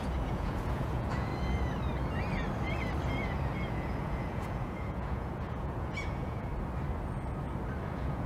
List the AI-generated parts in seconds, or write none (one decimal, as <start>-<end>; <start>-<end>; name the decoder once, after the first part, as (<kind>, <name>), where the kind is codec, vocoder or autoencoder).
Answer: 0.0-1.3 (vocoder, Vocos); 3.7-6.5; 7.9-8.3

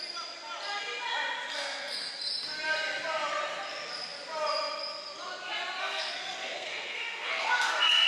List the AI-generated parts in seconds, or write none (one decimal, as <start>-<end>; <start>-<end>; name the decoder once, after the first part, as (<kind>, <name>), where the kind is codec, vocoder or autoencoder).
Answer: 1.5-2.1 (codec, SNAC); 5.8-8.1

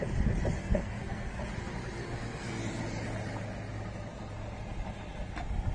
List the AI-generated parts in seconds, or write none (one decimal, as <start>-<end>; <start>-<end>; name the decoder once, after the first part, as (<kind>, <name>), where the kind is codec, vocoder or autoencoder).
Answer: 0.6-1.4 (codec, SNAC); 2.0-2.6

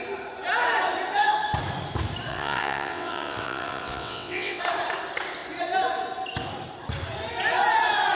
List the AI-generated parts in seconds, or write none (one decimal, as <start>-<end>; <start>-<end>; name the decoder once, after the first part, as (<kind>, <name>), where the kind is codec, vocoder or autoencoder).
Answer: 2.3-4.6 (vocoder, WaveNeXt)

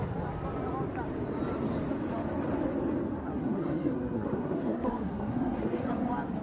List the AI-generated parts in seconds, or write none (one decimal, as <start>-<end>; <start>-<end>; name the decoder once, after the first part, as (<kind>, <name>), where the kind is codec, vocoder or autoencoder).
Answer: 3.2-5.9 (codec, SNAC)